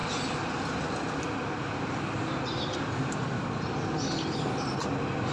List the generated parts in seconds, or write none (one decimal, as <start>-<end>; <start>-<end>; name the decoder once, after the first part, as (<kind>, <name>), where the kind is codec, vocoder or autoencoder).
none